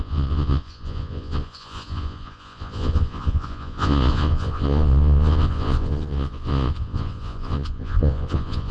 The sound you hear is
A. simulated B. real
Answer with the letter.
A